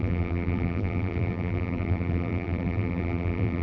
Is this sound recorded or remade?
remade